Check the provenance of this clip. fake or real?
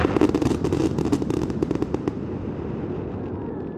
real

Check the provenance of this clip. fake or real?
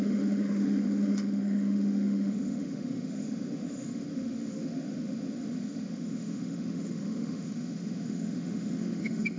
fake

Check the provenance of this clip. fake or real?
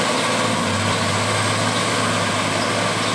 real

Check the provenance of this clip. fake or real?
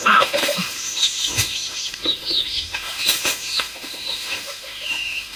fake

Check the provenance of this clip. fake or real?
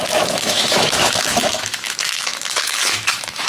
fake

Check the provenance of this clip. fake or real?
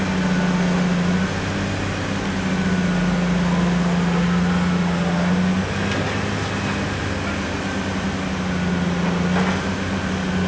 real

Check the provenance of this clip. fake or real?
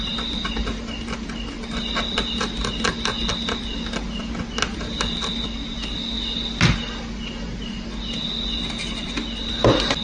real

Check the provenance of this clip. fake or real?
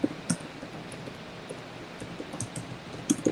real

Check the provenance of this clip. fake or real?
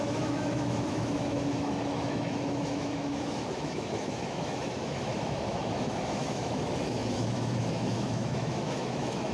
fake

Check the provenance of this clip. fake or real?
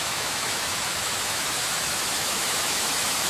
fake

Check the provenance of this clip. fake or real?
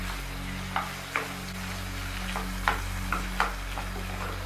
real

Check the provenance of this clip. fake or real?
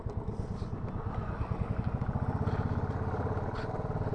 real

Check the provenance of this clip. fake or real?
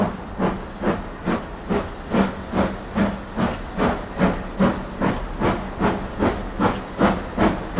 real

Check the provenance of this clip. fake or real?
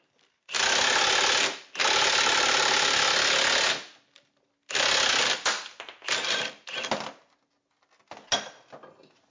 real